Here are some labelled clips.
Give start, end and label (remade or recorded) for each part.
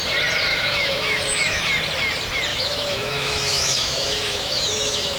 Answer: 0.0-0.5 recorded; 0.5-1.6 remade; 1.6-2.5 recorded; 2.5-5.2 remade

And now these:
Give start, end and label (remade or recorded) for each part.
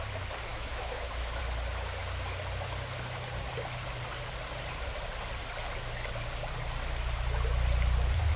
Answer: 0.0-0.5 recorded; 0.5-1.4 remade; 1.4-8.4 recorded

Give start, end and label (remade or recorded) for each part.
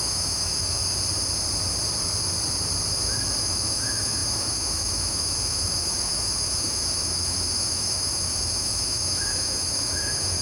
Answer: 0.0-0.8 remade; 0.8-3.4 recorded; 3.4-10.4 remade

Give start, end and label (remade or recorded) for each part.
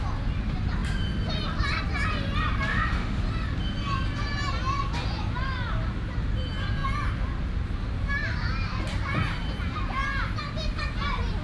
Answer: 0.0-2.7 recorded; 2.7-3.2 remade; 3.2-11.4 recorded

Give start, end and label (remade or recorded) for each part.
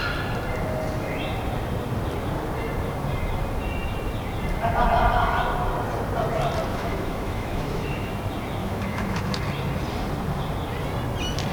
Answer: 0.0-6.7 recorded; 6.7-8.1 remade; 8.1-8.6 recorded; 8.6-9.4 remade; 9.4-11.5 recorded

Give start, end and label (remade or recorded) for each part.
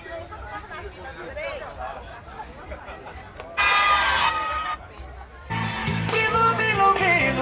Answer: 0.0-5.8 recorded; 5.8-6.6 remade; 6.6-7.4 recorded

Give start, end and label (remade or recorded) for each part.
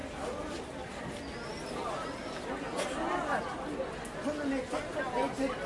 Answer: 0.0-5.7 recorded